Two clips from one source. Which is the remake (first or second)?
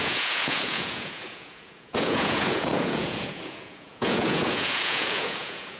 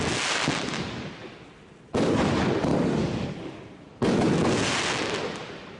first